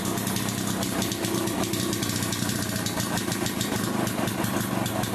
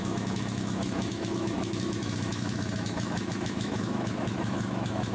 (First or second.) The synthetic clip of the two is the second